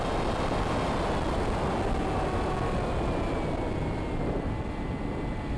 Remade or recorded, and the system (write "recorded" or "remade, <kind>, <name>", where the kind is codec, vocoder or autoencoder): recorded